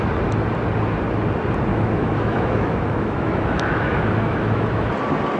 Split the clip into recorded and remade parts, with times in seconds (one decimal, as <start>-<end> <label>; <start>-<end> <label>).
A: 0.0-1.7 recorded; 1.7-4.9 remade; 4.9-5.4 recorded